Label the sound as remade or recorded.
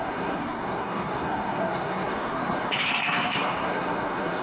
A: remade